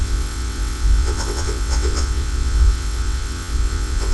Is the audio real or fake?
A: fake